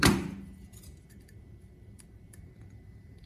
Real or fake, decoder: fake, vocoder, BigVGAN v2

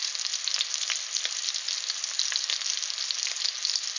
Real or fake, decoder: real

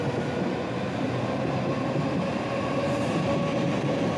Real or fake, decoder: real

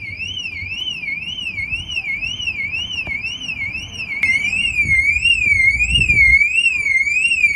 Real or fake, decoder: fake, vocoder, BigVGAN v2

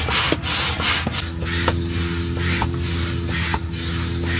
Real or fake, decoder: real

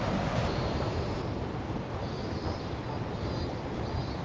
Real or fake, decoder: real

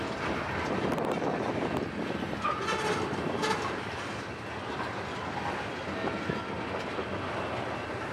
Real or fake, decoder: real